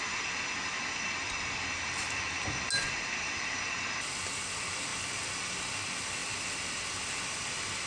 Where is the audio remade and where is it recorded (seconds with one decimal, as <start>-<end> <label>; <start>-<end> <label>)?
0.0-7.9 recorded